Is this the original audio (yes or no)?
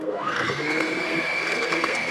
no